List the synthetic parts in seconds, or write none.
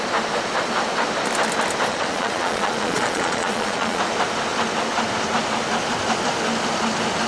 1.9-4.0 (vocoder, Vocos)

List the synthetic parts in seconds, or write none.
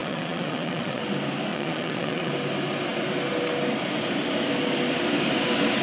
0.0-1.0 (vocoder, Vocos); 1.5-2.3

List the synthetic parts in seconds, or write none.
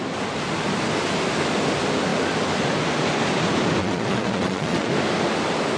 3.8-4.9 (vocoder, Vocos)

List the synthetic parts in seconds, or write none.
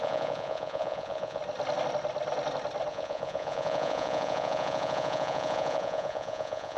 0.0-1.4 (vocoder, Vocos); 2.9-6.8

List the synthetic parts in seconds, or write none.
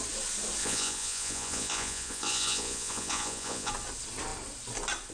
0.6-3.7 (vocoder, Vocos)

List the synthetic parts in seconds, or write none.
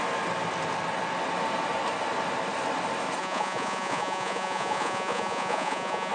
3.2-6.1 (vocoder, Vocos)